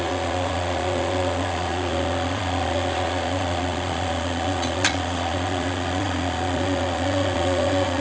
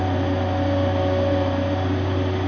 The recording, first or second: second